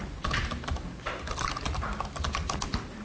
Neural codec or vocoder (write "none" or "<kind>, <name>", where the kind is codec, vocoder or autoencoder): none